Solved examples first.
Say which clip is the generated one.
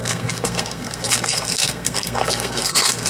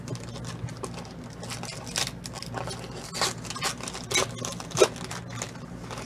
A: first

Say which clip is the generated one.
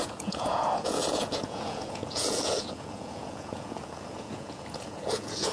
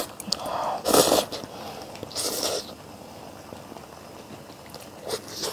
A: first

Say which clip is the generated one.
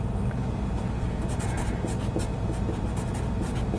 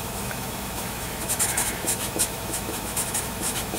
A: second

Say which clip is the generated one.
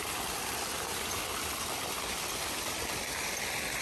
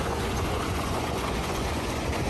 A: second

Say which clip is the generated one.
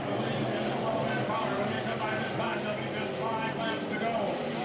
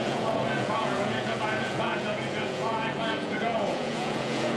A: second